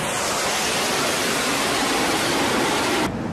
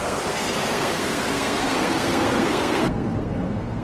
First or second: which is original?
first